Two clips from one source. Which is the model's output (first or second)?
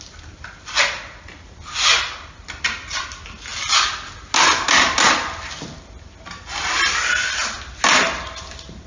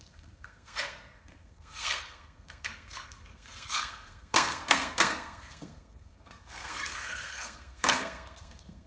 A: second